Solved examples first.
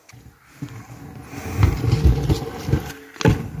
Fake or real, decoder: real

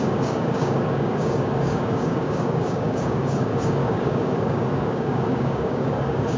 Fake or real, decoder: fake, codec, DAC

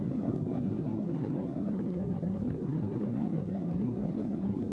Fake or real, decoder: fake, codec, SNAC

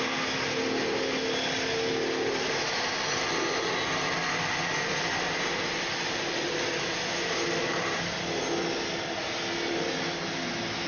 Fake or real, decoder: real